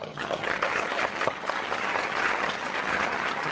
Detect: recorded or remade remade